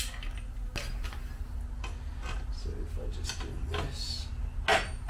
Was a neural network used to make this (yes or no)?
no